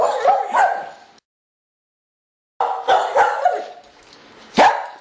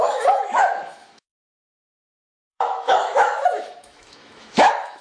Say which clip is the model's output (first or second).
second